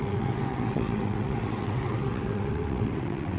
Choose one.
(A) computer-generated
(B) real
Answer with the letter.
A